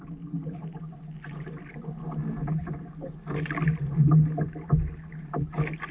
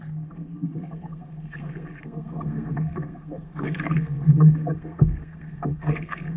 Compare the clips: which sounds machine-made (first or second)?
second